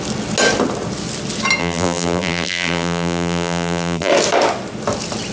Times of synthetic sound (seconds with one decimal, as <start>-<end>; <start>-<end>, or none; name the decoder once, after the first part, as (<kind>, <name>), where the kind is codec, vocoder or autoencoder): 1.6-4.1 (vocoder, BigVGAN v2)